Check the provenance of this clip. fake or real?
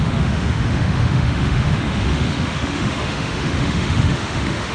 fake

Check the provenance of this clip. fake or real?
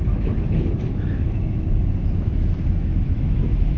fake